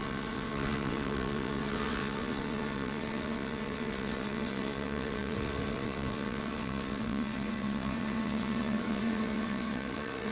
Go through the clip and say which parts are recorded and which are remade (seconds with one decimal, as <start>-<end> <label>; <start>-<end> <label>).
0.0-10.3 remade